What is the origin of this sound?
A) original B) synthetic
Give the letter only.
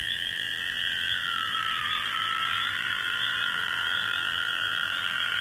B